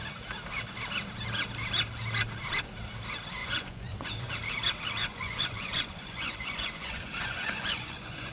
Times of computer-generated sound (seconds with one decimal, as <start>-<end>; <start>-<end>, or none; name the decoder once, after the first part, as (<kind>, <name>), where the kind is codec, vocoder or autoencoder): 3.4-4.3 (vocoder, Vocos); 5.0-8.3